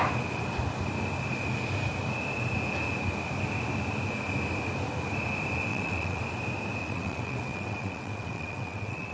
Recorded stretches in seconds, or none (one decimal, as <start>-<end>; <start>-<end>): 0.0-5.7; 6.2-6.8